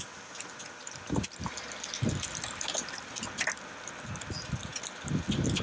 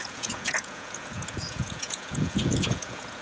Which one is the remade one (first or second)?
second